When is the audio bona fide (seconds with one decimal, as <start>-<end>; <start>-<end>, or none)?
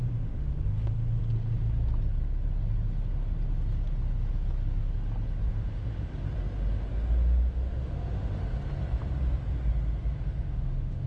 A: 1.2-5.5; 6.1-7.5; 8.4-10.2